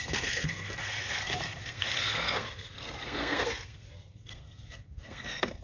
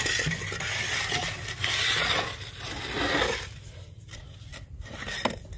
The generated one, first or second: first